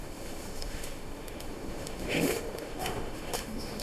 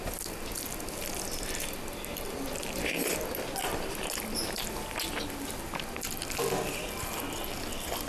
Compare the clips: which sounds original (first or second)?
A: second